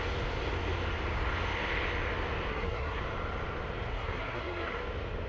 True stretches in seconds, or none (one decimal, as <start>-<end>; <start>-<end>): 0.0-2.5; 3.0-3.9; 4.8-5.3